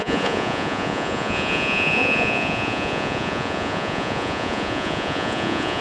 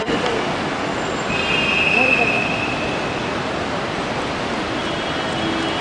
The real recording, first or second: second